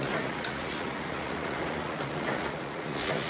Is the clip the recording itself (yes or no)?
no